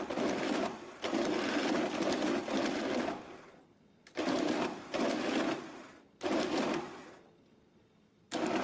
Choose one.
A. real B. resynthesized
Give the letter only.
A